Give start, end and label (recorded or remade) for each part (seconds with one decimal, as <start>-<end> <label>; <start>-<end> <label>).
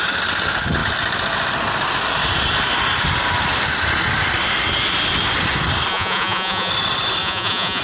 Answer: 0.0-5.9 recorded; 5.9-6.7 remade; 6.7-7.2 recorded; 7.2-7.8 remade